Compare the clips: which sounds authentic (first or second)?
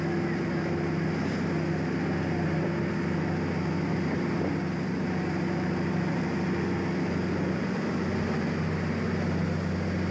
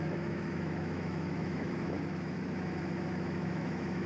first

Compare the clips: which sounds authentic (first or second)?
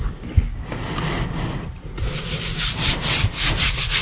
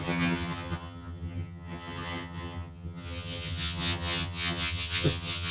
first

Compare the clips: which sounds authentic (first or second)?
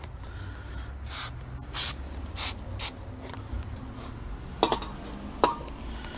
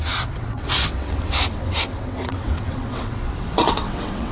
first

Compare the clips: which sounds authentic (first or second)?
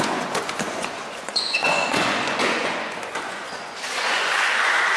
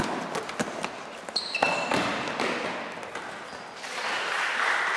second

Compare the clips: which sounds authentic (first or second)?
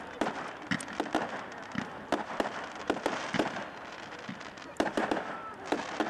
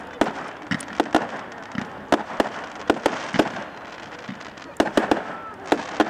second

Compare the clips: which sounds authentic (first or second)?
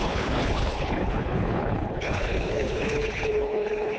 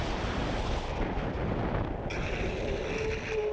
second